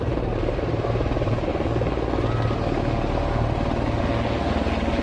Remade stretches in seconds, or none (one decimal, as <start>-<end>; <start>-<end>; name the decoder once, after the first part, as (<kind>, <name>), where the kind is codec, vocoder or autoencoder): 0.0-1.5 (vocoder, BigVGAN v2); 4.5-5.0